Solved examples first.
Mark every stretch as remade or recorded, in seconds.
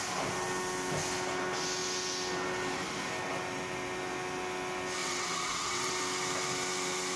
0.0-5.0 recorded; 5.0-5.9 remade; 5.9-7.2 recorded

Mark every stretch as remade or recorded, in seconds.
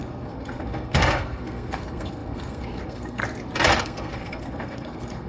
0.0-3.2 remade; 3.2-3.8 recorded; 3.8-5.3 remade